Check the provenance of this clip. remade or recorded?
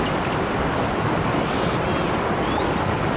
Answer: recorded